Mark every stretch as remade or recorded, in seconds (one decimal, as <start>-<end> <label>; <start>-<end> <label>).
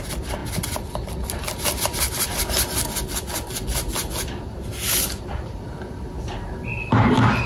0.0-7.5 recorded